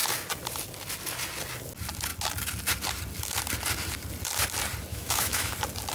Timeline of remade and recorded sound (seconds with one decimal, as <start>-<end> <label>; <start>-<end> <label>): 0.0-4.9 recorded; 4.9-5.5 remade; 5.5-5.9 recorded